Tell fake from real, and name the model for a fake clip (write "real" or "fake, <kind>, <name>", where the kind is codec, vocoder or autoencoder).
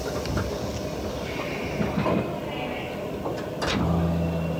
real